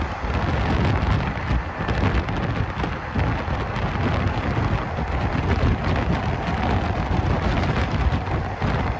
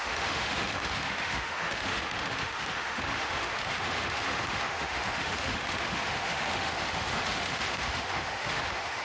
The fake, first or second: second